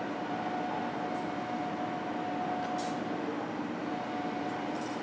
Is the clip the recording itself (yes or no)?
yes